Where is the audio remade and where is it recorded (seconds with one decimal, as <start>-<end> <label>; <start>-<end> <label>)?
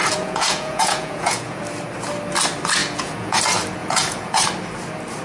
0.0-1.6 remade; 1.6-2.8 recorded; 2.8-3.4 remade; 3.4-3.8 recorded; 3.8-4.4 remade; 4.4-5.2 recorded